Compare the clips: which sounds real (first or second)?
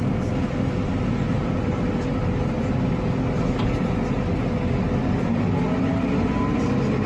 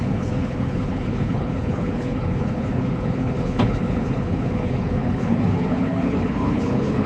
first